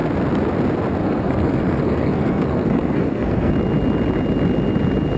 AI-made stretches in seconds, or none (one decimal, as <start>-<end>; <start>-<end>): 1.0-3.5